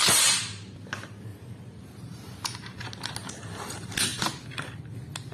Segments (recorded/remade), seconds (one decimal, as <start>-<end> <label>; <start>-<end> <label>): 0.0-1.3 recorded; 1.3-2.8 remade; 2.8-5.3 recorded